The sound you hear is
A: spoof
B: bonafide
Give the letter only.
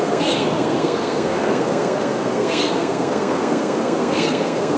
A